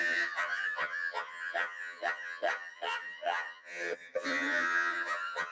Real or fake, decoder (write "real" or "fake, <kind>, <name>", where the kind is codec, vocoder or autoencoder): fake, vocoder, HiFi-GAN